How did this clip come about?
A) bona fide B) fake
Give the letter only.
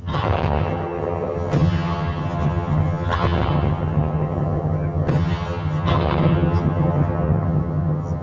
B